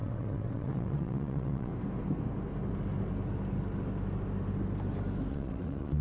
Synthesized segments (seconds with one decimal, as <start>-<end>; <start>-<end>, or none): 0.0-1.7; 5.3-6.0